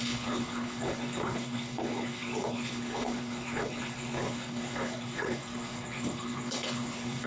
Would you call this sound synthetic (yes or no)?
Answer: yes